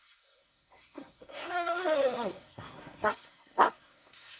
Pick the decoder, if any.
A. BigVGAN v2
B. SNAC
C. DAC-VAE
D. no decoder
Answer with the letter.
B